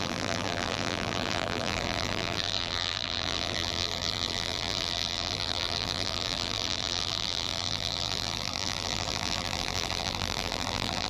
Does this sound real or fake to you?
fake